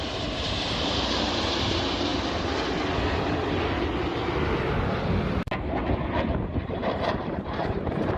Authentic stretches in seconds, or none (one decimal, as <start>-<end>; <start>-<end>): 2.1-6.4